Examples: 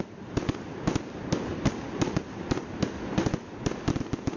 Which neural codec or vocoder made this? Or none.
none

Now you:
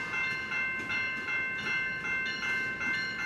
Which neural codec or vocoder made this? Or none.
none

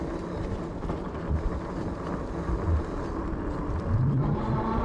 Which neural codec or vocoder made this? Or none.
none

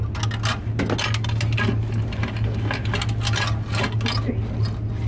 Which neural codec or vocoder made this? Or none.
none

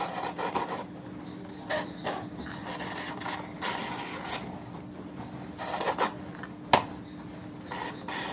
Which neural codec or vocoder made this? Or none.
none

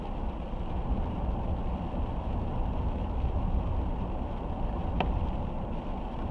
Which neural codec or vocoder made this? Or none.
none